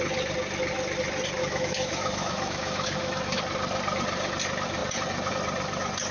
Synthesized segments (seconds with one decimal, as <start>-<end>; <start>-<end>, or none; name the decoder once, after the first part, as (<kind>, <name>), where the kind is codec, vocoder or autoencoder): 1.4-3.4 (autoencoder, DAC-VAE)